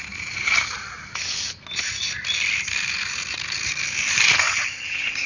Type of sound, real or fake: real